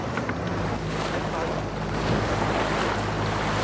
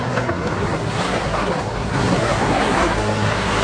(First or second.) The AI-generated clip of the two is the second